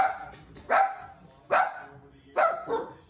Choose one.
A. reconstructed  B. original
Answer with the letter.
B